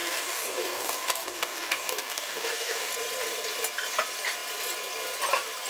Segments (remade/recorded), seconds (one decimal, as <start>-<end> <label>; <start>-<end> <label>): 0.0-2.9 remade; 2.9-5.7 recorded

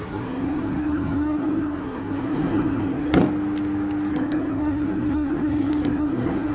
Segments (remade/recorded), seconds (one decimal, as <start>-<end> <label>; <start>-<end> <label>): 0.0-3.2 remade; 3.2-4.1 recorded; 4.1-6.5 remade